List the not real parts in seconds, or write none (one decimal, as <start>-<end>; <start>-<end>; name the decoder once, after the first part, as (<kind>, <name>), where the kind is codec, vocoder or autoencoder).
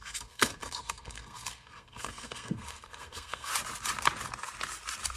0.0-3.5 (codec, SNAC)